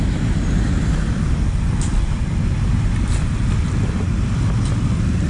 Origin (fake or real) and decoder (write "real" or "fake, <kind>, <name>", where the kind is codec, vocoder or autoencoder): real